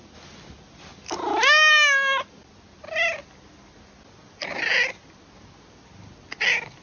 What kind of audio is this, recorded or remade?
recorded